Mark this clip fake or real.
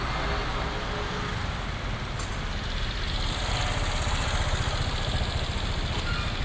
real